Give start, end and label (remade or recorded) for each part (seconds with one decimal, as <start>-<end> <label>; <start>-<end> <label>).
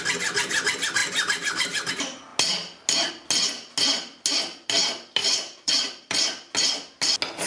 0.0-1.0 recorded; 1.0-1.9 remade; 1.9-5.2 recorded; 5.2-6.2 remade; 6.2-7.5 recorded